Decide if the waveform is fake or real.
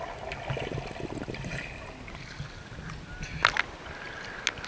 real